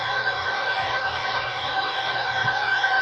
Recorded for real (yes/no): no